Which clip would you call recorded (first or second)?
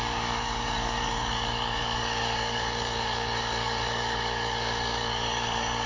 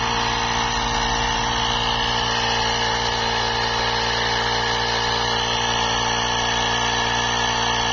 second